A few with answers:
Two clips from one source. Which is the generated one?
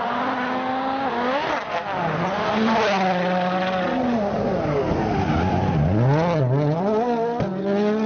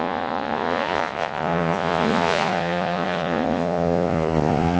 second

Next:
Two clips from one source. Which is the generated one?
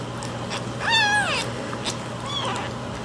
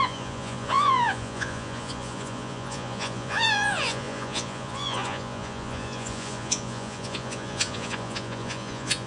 second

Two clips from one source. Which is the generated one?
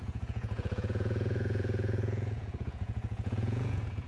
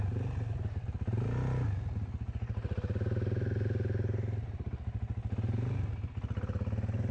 first